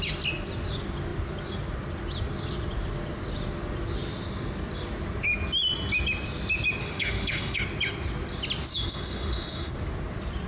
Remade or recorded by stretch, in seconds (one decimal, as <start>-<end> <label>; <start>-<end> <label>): 0.0-6.8 recorded; 6.8-7.6 remade; 7.6-8.7 recorded; 8.7-9.7 remade; 9.7-10.5 recorded